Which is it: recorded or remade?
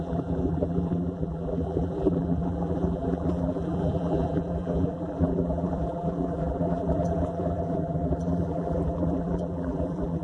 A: remade